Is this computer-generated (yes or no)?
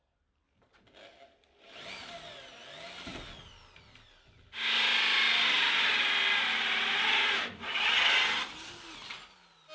no